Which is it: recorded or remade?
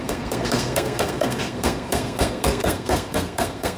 remade